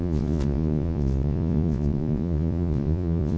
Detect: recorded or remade remade